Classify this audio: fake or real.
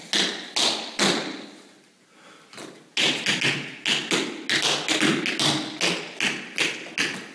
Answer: real